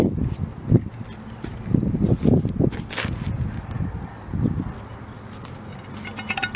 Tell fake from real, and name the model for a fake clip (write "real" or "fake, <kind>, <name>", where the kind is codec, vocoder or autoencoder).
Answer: real